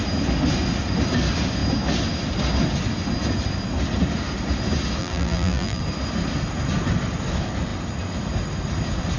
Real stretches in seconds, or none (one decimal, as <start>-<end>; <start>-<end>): 0.0-5.0; 5.8-9.2